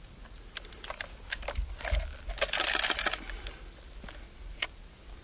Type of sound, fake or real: real